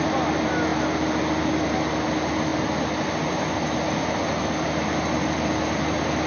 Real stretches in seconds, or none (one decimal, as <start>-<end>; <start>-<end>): 0.0-6.3